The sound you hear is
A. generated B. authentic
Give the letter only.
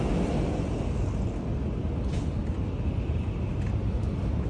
B